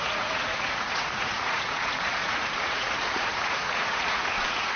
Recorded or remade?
remade